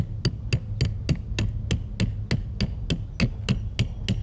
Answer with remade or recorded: recorded